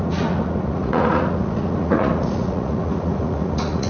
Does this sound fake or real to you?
fake